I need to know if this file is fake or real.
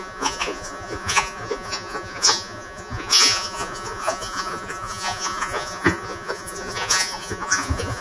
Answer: fake